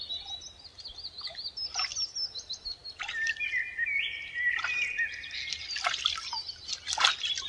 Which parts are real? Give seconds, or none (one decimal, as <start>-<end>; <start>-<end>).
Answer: 0.0-7.5